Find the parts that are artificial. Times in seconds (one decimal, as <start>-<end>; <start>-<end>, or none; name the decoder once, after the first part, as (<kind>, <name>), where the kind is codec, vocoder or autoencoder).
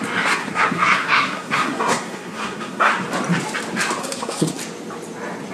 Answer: 0.4-2.9 (codec, SNAC); 4.0-4.6